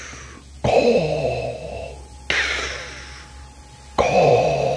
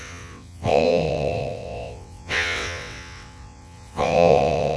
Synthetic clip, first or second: second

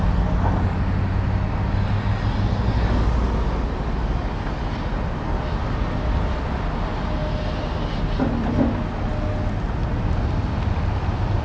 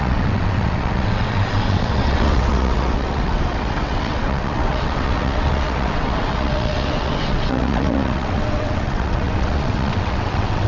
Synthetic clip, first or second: second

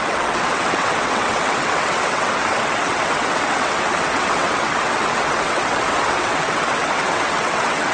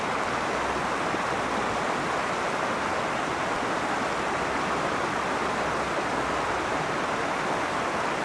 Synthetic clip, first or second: first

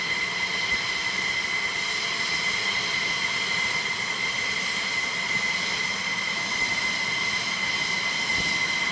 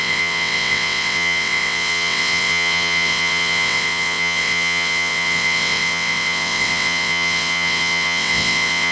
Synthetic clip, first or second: second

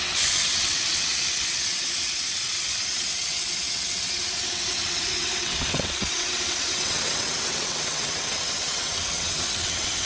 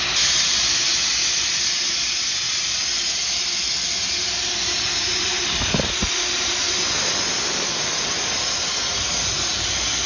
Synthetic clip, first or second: first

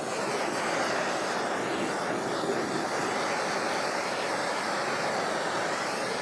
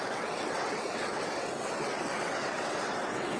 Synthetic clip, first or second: second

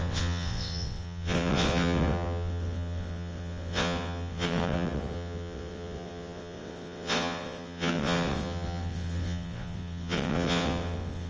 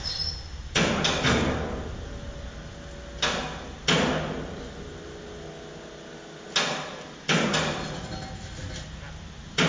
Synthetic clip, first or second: first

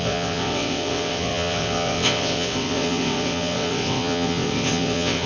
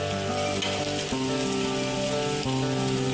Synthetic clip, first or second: first